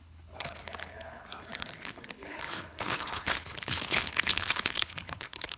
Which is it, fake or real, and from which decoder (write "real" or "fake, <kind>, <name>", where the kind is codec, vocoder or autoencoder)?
fake, codec, HILCodec